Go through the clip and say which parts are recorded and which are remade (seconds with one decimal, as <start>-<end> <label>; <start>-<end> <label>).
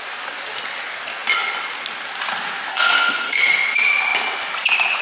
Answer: 0.0-2.7 recorded; 2.7-3.4 remade; 3.4-5.0 recorded